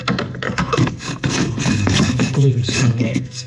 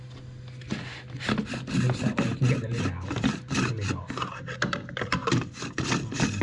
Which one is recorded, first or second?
second